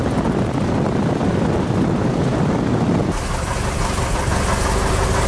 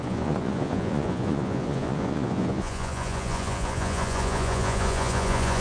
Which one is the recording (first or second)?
first